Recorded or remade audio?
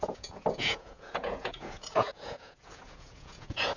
remade